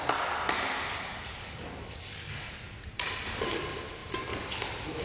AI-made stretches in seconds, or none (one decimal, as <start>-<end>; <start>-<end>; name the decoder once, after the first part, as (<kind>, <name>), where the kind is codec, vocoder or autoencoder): 1.1-2.5 (codec, DAC)